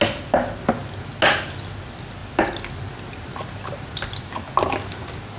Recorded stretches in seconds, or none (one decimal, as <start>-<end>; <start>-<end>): 0.0-5.4